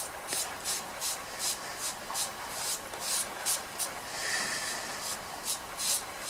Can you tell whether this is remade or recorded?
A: remade